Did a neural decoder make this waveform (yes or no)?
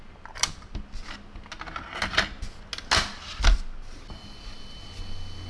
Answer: no